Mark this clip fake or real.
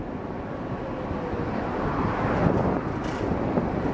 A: real